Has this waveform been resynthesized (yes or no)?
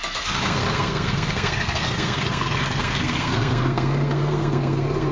yes